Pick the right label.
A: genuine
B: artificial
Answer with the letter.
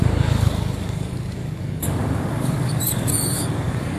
B